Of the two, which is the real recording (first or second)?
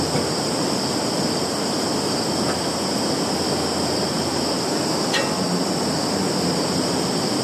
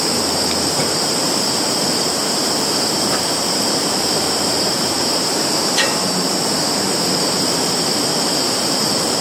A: first